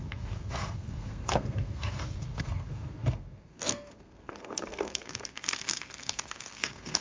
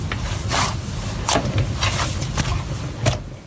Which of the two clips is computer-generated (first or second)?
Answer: first